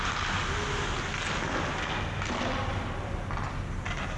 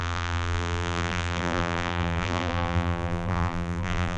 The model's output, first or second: second